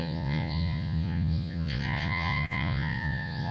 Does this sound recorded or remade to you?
remade